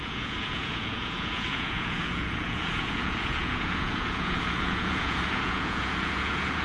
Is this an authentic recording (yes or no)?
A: no